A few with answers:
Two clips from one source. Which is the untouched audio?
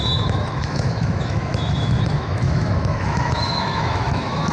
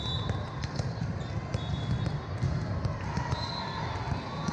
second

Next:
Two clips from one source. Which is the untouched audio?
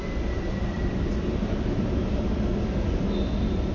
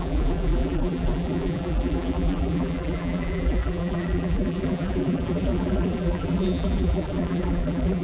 first